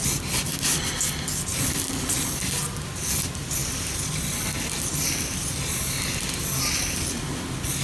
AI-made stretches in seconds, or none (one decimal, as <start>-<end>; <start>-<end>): none